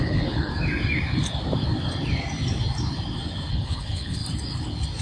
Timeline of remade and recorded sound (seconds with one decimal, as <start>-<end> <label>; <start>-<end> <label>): 0.0-0.5 remade; 0.5-3.5 recorded; 3.5-4.2 remade; 4.2-5.0 recorded